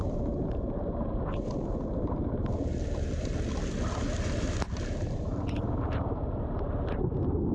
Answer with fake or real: real